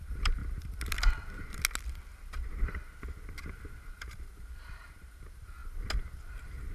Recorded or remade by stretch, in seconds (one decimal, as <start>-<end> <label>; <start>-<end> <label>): 0.0-0.4 remade; 0.4-3.9 recorded; 3.9-5.6 remade; 5.6-6.3 recorded; 6.3-6.7 remade